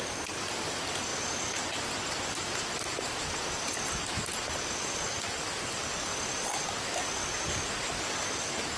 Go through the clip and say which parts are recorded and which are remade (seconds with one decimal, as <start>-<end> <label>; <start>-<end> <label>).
0.0-8.8 recorded